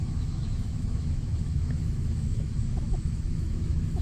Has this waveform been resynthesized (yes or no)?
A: yes